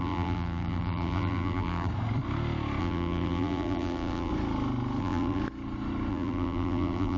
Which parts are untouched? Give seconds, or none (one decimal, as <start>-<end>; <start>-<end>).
1.9-2.8; 4.3-5.0; 5.4-6.1